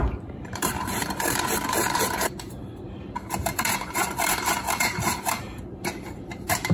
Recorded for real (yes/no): no